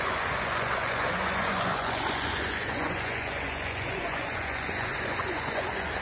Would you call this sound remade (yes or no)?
yes